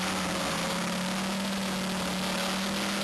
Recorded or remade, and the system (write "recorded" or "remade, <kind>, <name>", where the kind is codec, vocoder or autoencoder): recorded